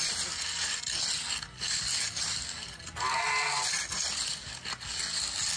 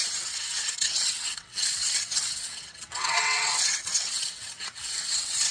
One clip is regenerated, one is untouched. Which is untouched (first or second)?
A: first